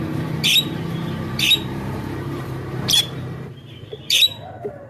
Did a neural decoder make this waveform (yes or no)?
yes